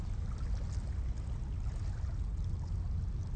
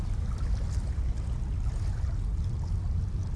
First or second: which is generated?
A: second